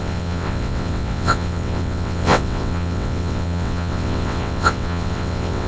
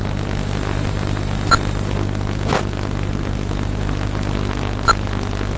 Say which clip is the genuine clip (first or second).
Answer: second